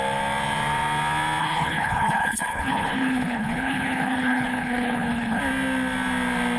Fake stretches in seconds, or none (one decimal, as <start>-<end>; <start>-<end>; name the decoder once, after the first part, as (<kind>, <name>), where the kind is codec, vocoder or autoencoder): 1.4-5.4 (codec, HILCodec)